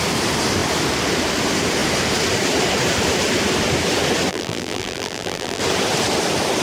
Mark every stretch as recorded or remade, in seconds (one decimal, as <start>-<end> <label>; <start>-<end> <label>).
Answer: 0.0-4.3 recorded; 4.3-5.6 remade; 5.6-6.6 recorded